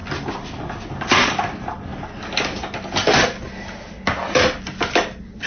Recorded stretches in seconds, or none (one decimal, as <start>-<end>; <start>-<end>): 0.0-5.5